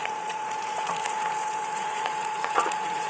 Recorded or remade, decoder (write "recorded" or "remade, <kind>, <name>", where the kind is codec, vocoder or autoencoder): remade, vocoder, Vocos